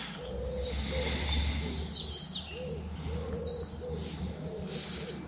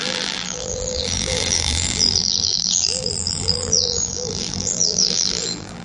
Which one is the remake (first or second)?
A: second